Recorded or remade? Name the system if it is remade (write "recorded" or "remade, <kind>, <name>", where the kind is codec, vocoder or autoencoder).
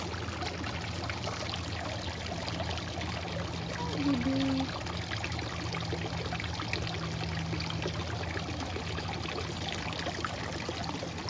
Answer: recorded